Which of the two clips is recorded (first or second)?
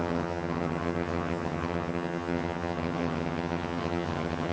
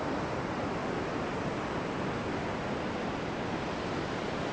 second